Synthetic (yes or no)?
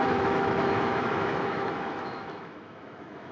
yes